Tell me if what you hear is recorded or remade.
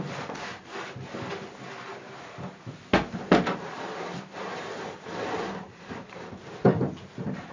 recorded